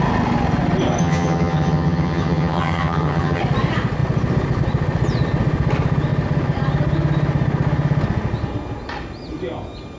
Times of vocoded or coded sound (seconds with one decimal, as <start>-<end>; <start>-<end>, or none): 1.0-3.4